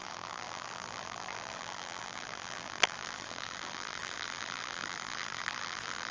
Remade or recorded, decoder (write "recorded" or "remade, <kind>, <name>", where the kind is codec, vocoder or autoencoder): remade, vocoder, BigVGAN v2